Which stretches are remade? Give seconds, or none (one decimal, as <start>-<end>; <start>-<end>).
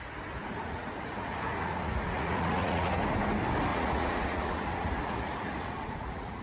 0.4-2.9; 3.7-6.4